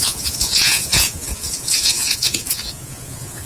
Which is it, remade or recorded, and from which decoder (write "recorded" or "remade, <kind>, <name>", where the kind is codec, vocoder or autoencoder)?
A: remade, vocoder, Vocos